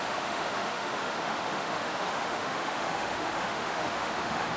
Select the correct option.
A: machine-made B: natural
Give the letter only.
A